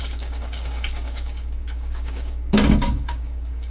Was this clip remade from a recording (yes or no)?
yes